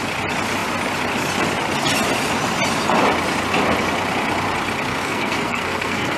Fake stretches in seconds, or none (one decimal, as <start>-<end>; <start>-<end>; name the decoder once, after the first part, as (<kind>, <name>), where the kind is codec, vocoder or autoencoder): 4.9-6.2 (codec, SNAC)